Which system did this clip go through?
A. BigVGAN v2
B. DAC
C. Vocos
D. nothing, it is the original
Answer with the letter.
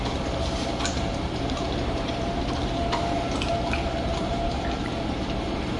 A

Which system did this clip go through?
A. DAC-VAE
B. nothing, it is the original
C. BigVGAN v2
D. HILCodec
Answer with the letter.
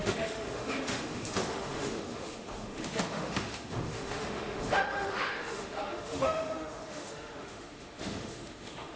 A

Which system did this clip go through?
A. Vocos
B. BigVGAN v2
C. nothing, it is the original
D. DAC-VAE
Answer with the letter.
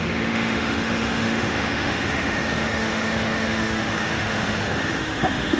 D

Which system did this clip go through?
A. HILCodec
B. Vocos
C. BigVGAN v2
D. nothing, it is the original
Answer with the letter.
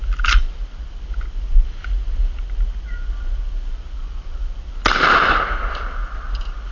D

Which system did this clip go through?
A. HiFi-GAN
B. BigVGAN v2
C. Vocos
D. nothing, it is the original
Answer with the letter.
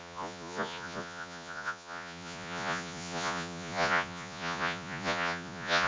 C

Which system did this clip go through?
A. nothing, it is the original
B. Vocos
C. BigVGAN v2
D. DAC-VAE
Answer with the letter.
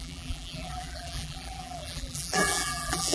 C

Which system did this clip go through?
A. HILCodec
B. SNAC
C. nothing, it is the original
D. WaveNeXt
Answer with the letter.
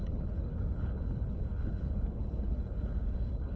A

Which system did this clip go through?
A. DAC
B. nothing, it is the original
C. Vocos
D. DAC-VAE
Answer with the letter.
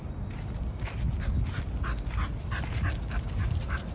B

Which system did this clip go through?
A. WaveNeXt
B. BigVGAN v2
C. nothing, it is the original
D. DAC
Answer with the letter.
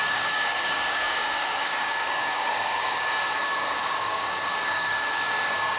D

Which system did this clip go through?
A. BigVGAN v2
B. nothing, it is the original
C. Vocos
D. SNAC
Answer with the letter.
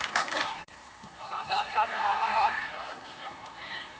D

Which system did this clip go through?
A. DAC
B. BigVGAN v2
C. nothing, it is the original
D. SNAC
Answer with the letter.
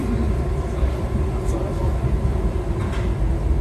C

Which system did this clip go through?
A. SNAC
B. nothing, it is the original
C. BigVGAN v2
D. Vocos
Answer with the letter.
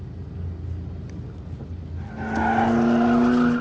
B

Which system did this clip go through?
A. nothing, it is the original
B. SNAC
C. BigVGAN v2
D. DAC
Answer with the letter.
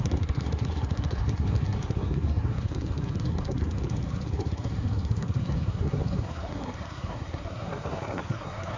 B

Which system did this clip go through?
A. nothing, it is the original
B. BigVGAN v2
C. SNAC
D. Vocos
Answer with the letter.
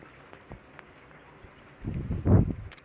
A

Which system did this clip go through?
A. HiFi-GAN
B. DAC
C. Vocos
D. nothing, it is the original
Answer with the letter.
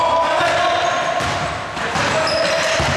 D